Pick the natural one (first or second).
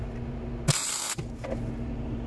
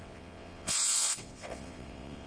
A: first